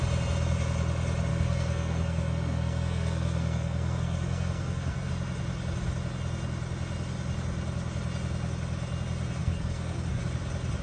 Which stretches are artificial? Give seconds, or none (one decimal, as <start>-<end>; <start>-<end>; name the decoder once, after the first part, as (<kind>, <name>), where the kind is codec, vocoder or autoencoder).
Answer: 1.3-5.1 (codec, SNAC); 9.4-10.2